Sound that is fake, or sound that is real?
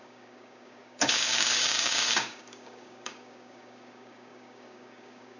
fake